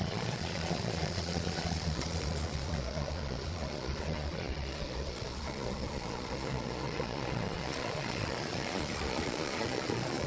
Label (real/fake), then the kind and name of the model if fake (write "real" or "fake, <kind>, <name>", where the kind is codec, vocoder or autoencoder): fake, vocoder, Vocos